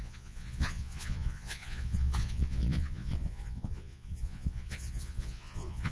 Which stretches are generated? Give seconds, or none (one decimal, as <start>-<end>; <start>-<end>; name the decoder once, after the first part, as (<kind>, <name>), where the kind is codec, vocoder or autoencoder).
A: 0.0-5.9 (vocoder, Vocos)